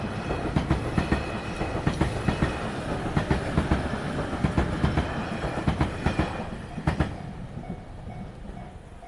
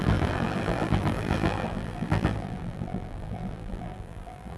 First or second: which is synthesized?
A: second